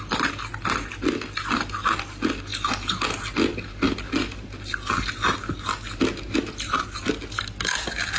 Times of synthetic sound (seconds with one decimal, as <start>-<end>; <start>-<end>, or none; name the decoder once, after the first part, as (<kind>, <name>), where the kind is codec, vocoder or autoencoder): none